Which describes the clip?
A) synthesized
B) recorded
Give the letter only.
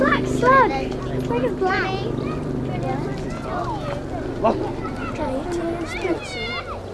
B